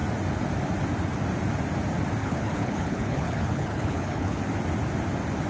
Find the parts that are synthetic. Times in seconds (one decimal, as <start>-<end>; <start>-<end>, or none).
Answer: 2.2-4.4